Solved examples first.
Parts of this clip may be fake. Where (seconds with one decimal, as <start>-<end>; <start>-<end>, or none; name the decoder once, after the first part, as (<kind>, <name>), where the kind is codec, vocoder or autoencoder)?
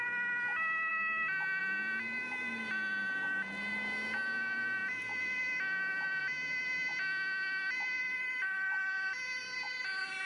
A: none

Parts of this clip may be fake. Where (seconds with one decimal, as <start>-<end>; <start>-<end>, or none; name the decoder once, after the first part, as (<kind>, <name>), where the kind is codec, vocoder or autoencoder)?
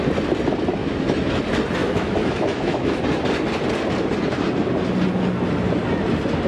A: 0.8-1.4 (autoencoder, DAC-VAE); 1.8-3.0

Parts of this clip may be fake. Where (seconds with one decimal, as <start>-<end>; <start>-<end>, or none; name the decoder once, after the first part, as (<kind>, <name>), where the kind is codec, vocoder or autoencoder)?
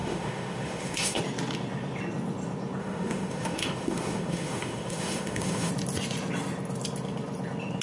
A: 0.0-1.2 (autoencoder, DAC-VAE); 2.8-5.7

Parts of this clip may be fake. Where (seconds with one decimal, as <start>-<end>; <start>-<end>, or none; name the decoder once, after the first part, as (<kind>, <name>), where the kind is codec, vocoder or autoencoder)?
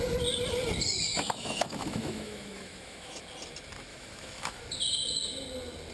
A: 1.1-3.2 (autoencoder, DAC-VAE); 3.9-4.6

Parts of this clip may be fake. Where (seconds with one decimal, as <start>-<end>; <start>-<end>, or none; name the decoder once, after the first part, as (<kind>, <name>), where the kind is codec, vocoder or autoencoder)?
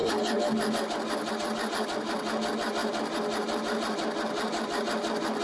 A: none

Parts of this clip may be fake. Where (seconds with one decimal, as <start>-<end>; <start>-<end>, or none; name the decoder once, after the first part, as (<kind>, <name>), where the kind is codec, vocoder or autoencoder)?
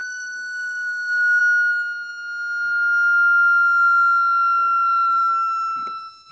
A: 0.0-1.4 (autoencoder, DAC-VAE)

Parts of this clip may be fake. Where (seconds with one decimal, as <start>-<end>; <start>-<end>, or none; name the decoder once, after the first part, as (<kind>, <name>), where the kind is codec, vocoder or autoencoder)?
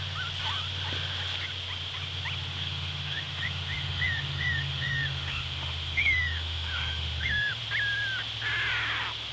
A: 2.5-7.6 (autoencoder, DAC-VAE)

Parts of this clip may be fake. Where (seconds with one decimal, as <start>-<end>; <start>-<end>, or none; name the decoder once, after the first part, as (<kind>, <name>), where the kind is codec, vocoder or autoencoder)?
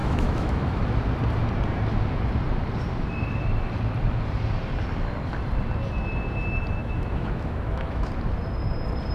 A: 0.0-0.9 (autoencoder, DAC-VAE); 6.8-8.1